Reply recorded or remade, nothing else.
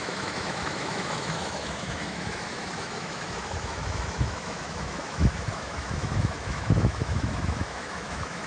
remade